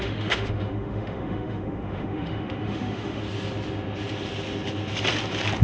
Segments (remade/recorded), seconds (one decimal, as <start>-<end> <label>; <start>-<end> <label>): 0.0-3.2 remade; 3.2-5.6 recorded